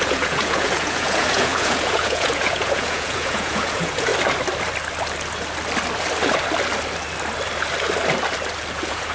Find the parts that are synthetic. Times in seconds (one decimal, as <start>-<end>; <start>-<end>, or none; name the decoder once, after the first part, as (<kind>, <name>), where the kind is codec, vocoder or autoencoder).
0.0-4.1 (vocoder, Vocos); 8.7-9.1